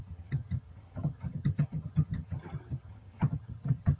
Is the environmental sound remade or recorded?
remade